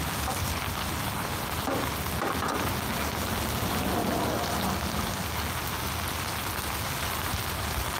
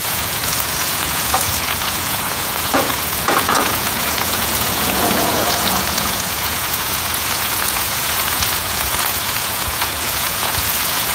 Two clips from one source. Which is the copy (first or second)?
second